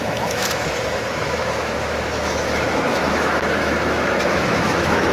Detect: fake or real fake